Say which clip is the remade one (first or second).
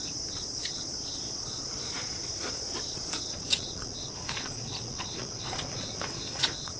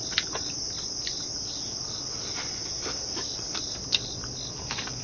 first